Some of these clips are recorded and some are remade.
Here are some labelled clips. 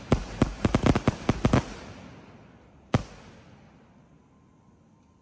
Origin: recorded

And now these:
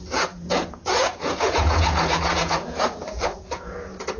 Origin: remade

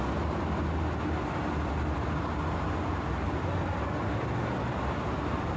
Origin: recorded